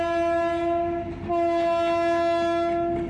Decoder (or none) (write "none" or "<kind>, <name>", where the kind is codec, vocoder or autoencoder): none